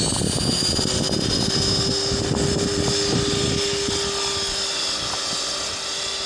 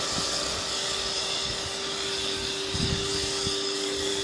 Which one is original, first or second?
first